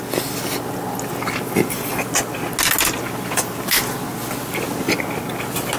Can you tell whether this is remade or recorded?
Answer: recorded